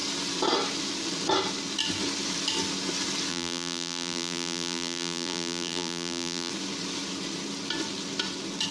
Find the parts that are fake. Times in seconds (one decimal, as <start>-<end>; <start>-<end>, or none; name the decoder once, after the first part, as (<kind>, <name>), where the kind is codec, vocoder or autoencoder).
3.3-6.5 (vocoder, BigVGAN v2)